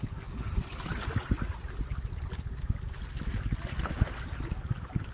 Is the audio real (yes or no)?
yes